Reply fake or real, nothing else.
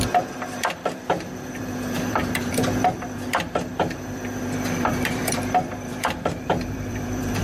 fake